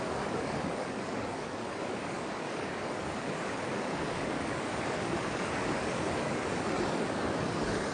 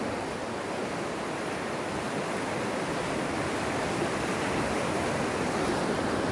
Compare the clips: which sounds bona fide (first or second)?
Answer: second